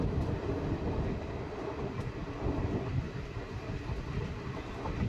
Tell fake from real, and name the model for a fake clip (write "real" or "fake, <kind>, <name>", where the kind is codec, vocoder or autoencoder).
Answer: real